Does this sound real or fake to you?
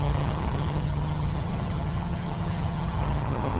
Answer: fake